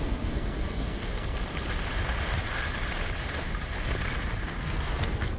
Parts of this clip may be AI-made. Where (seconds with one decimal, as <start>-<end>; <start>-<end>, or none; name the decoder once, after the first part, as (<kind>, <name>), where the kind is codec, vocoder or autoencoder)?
0.0-1.4 (codec, SNAC); 4.6-5.4